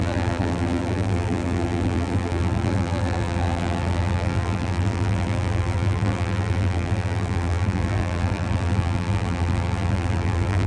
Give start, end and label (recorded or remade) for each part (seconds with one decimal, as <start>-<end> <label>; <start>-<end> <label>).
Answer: 0.0-10.7 remade